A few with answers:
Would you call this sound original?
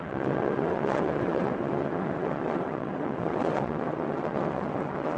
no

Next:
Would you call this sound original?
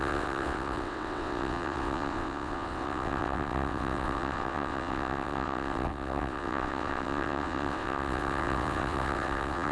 no